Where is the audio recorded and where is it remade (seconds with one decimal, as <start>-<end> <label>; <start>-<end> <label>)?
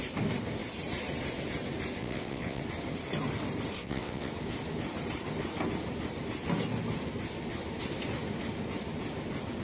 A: 0.0-2.0 recorded; 2.0-2.6 remade; 2.6-3.8 recorded; 3.8-4.3 remade; 4.3-9.6 recorded